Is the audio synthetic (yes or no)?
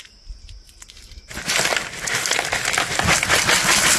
no